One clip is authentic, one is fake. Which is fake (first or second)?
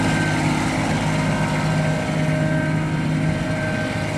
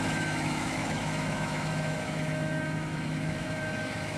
second